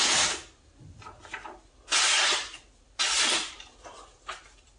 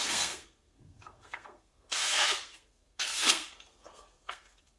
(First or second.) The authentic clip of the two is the first